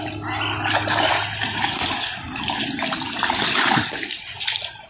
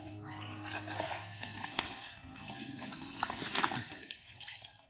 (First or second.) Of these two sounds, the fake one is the second